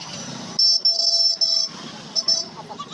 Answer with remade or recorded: recorded